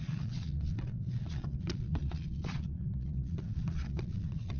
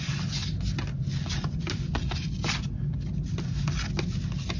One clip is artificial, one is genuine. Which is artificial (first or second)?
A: first